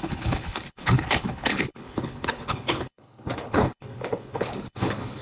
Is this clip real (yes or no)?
no